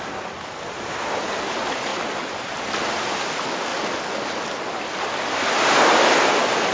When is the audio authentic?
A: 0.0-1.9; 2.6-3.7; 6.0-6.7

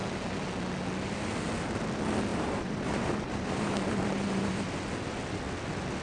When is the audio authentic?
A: 0.0-2.3; 4.6-6.0

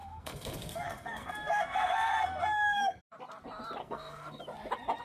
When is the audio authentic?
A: 3.0-3.8; 4.4-5.0